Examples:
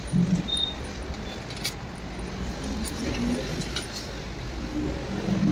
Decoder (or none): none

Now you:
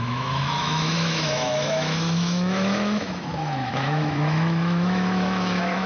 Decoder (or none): autoencoder, DAC-VAE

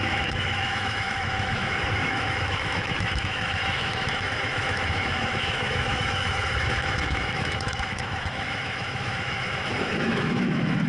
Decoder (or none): autoencoder, DAC-VAE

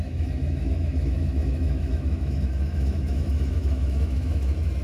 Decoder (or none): autoencoder, DAC-VAE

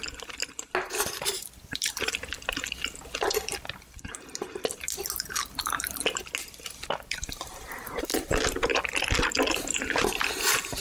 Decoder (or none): none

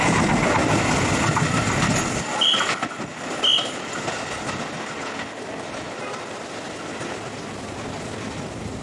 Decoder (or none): none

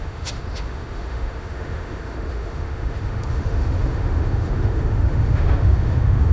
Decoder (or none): autoencoder, DAC-VAE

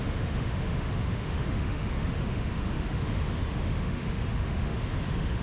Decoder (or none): autoencoder, DAC-VAE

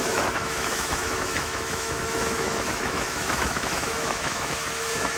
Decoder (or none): autoencoder, DAC-VAE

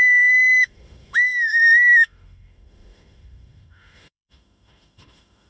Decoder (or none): autoencoder, DAC-VAE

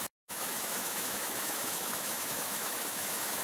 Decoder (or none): autoencoder, DAC-VAE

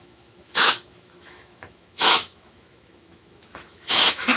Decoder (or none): autoencoder, DAC-VAE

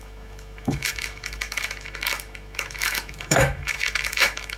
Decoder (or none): autoencoder, DAC-VAE